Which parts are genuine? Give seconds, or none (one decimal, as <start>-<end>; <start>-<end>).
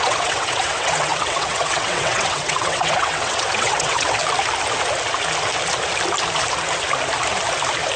4.2-8.0